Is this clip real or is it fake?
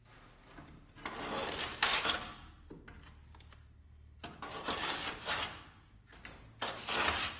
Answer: real